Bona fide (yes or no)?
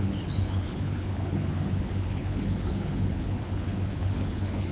no